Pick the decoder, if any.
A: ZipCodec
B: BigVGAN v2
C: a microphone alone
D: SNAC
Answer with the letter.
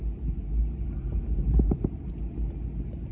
C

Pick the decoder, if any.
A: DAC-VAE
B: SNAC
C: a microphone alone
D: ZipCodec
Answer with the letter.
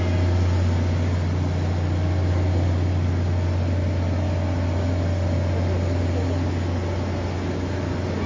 C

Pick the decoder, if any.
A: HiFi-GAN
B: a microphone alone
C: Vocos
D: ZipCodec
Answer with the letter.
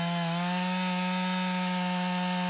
B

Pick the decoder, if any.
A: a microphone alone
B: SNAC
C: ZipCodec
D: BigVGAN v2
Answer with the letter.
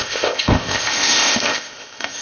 C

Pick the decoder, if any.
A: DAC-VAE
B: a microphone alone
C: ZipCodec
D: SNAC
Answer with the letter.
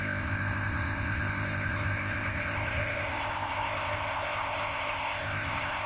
C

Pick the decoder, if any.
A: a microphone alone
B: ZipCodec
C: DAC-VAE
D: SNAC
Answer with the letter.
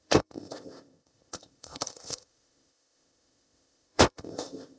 B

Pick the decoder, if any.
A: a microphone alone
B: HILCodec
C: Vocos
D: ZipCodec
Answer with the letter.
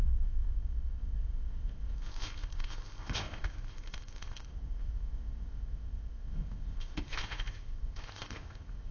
D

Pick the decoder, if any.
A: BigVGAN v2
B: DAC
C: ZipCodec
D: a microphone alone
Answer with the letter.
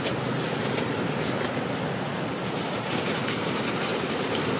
D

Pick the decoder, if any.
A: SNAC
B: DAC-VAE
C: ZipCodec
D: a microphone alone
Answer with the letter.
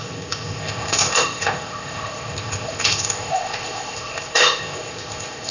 C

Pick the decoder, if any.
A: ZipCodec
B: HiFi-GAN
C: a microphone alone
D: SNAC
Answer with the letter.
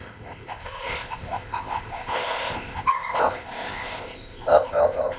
A